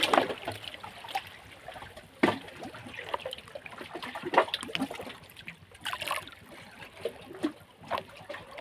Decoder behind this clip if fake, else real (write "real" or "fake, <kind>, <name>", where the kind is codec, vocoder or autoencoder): real